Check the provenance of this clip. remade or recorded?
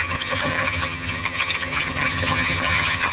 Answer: remade